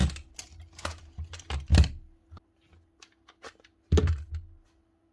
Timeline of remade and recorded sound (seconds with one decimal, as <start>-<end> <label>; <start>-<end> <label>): 0.0-5.1 recorded